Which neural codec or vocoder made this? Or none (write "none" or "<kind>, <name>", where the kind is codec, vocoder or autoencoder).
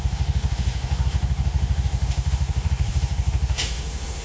autoencoder, DAC-VAE